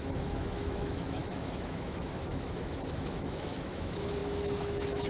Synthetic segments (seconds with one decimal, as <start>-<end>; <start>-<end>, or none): 0.0-5.1